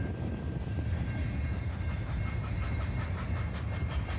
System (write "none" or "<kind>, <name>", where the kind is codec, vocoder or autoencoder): vocoder, BigVGAN v2